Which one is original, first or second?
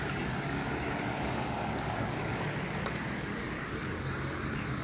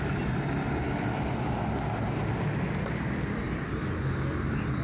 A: second